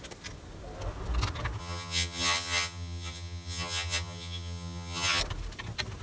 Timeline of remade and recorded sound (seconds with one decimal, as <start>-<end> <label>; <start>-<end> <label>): 0.0-1.6 recorded; 1.6-5.2 remade; 5.2-6.0 recorded